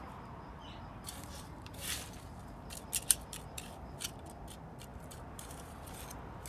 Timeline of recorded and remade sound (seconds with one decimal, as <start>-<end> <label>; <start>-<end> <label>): 0.0-0.9 recorded; 0.9-2.4 remade; 2.4-4.9 recorded; 4.9-5.9 remade; 5.9-6.5 recorded